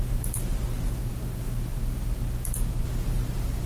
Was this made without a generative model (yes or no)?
yes